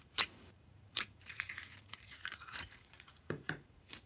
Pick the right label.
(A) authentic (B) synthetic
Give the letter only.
B